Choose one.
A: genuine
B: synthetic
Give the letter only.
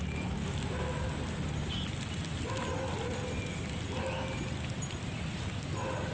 A